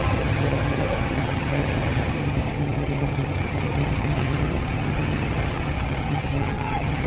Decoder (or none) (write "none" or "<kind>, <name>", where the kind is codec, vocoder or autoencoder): vocoder, HiFi-GAN